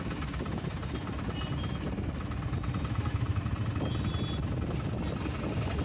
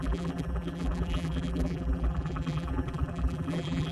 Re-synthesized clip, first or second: second